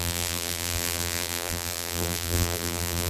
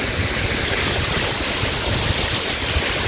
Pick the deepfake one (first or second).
first